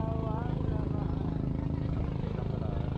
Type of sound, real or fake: real